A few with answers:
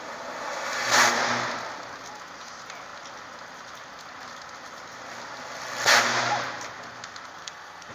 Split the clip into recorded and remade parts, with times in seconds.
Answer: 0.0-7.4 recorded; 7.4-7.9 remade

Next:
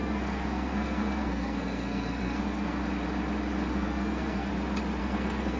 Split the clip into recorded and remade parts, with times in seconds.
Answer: 0.0-2.8 remade; 2.8-3.7 recorded; 3.7-4.5 remade; 4.5-5.0 recorded; 5.0-5.6 remade

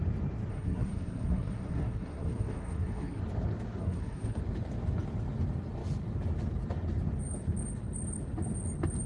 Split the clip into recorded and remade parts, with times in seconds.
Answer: 0.0-0.5 recorded; 0.5-3.2 remade; 3.2-3.8 recorded; 3.8-4.4 remade; 4.4-9.1 recorded

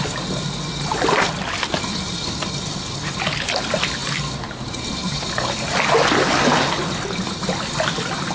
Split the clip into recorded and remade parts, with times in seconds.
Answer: 0.0-8.3 recorded

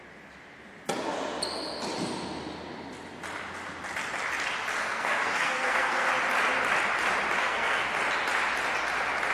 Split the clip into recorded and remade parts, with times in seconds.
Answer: 0.0-4.8 recorded; 4.8-6.1 remade; 6.1-7.4 recorded; 7.4-7.9 remade; 7.9-9.3 recorded